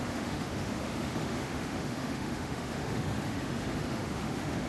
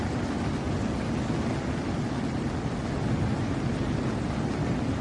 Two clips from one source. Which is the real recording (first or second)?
second